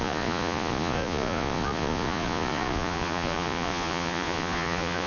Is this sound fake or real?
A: fake